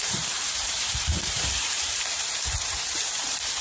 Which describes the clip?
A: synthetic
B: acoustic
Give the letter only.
A